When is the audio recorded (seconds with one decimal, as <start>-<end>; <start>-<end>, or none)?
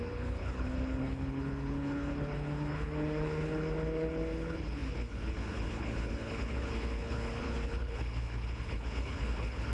none